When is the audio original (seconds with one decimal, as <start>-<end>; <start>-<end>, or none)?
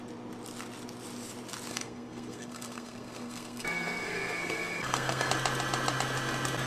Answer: 0.0-1.7; 5.3-6.7